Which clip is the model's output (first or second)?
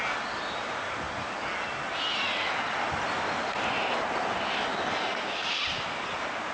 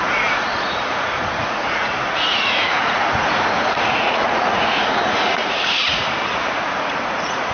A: second